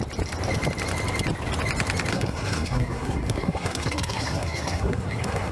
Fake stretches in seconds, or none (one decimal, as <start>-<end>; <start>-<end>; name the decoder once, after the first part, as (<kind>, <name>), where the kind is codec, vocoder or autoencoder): 2.1-5.5 (codec, SNAC)